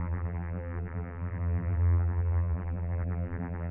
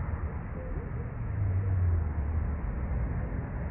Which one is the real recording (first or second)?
second